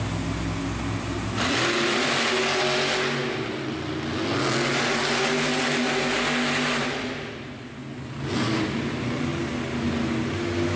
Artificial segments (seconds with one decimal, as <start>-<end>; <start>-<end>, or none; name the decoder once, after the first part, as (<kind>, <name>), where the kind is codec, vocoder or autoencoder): none